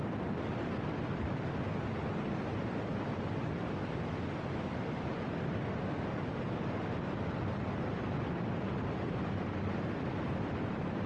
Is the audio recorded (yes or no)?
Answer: yes